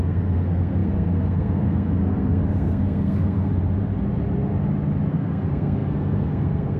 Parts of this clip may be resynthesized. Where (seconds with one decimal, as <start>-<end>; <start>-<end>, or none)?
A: 0.0-3.5; 5.1-6.8